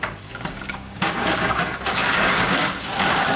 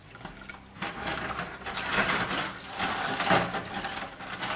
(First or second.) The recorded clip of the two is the second